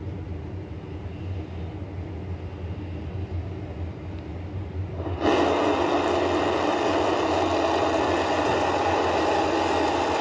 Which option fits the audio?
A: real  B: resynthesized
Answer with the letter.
A